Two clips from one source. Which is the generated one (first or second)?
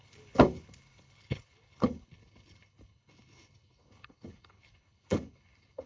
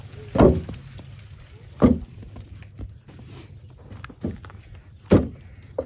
first